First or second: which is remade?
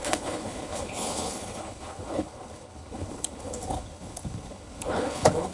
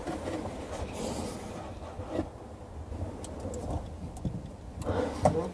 first